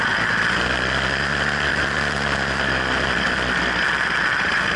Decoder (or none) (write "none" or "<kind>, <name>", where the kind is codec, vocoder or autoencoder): none